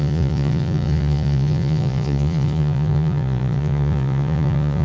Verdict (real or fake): fake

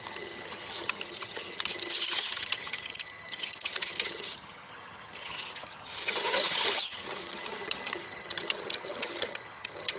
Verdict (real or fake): fake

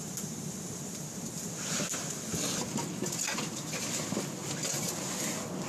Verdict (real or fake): real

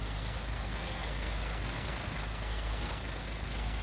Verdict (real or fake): fake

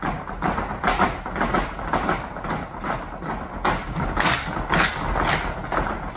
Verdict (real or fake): real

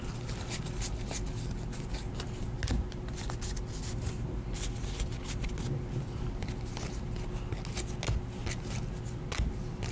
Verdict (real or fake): real